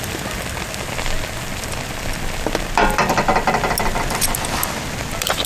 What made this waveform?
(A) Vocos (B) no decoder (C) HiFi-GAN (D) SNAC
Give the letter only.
B